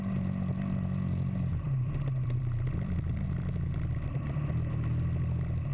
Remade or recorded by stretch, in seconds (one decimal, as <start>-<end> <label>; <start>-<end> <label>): 0.0-1.5 recorded; 1.5-4.5 remade; 4.5-5.7 recorded

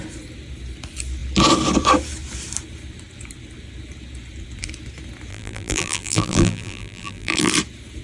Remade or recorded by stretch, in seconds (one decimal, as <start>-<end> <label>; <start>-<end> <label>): 0.0-5.3 recorded; 5.3-7.5 remade; 7.5-8.0 recorded

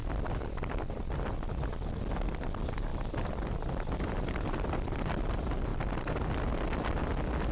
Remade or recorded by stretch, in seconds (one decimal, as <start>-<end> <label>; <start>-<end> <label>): 0.0-0.8 remade; 0.8-2.9 recorded; 2.9-5.3 remade; 5.3-5.7 recorded; 5.7-6.5 remade; 6.5-7.5 recorded

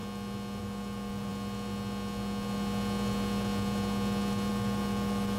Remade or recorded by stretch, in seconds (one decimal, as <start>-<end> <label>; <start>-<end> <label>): 0.0-0.6 recorded; 0.6-1.3 remade; 1.3-4.5 recorded; 4.5-5.4 remade

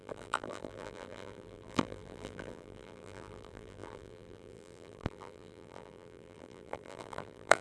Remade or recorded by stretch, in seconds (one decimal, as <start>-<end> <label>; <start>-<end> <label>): 0.0-7.6 remade

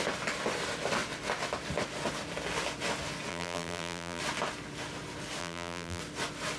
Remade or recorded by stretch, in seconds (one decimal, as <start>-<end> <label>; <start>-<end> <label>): 0.0-3.3 recorded; 3.3-4.2 remade; 4.2-5.4 recorded; 5.4-6.0 remade; 6.0-6.6 recorded